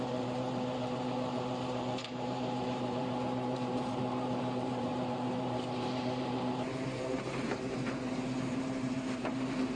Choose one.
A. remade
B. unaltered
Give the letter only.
A